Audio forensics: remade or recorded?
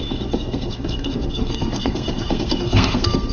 remade